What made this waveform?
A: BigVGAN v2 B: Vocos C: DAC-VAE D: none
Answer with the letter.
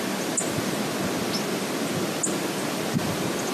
D